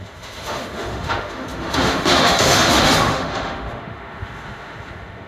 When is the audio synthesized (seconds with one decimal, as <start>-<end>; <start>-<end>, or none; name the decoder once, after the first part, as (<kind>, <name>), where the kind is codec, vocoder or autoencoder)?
0.0-5.3 (autoencoder, DAC-VAE)